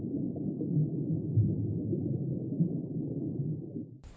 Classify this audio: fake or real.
fake